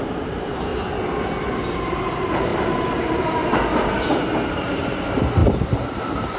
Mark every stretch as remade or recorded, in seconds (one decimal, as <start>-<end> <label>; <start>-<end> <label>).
0.0-0.7 remade; 0.7-1.9 recorded; 1.9-2.5 remade; 2.5-3.0 recorded; 3.0-3.4 remade; 3.4-4.5 recorded; 4.5-6.4 remade

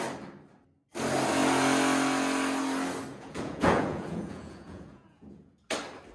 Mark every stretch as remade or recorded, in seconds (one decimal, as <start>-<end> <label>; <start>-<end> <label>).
0.0-3.1 recorded; 3.1-5.5 remade; 5.5-6.1 recorded

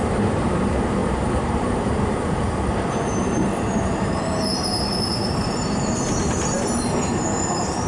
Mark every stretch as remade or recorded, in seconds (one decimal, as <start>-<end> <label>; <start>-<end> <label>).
0.0-7.9 remade

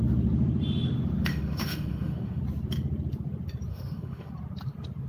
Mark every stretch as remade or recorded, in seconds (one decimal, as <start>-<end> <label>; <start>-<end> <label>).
0.0-1.3 recorded; 1.3-2.4 remade; 2.4-3.7 recorded; 3.7-4.3 remade; 4.3-5.1 recorded

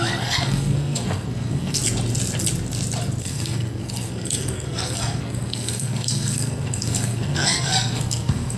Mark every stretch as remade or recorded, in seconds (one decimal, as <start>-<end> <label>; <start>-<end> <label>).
0.0-1.8 remade; 1.8-3.2 recorded; 3.2-8.6 remade

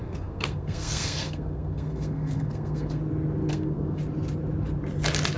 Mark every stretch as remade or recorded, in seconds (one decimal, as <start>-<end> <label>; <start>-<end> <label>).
0.0-3.0 remade; 3.0-3.5 recorded; 3.5-4.0 remade; 4.0-5.4 recorded

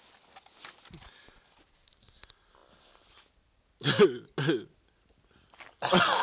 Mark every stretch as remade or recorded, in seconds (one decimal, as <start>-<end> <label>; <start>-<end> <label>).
0.0-6.2 recorded

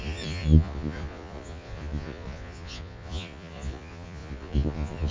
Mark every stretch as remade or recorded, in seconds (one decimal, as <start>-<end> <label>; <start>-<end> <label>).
0.0-5.1 remade